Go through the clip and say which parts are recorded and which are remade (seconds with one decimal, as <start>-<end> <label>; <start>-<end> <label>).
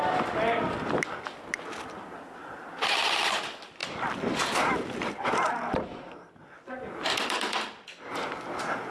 0.0-8.9 recorded